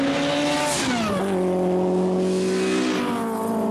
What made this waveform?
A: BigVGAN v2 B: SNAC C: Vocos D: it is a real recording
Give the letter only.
D